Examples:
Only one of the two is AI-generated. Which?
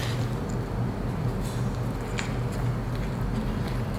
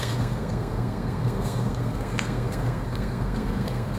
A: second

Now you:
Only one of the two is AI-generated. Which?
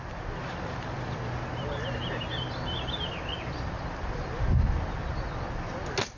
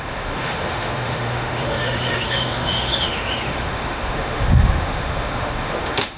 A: second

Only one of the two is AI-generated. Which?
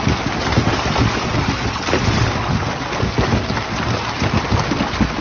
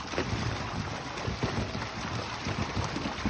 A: second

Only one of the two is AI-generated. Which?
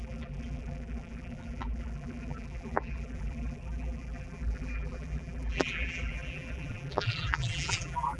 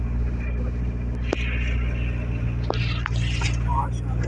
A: first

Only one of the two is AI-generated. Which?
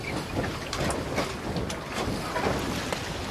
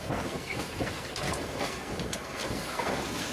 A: second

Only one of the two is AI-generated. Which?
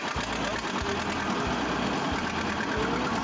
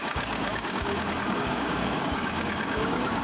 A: second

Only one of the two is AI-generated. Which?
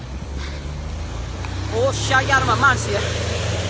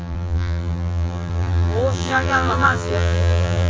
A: second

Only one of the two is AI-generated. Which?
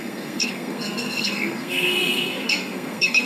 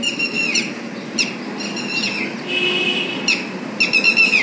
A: first